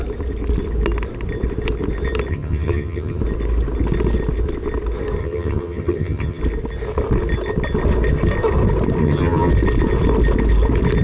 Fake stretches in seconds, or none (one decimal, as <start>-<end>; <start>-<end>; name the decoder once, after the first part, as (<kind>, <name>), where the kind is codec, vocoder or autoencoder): 2.3-3.2 (vocoder, HiFi-GAN); 5.2-6.4; 9.0-9.5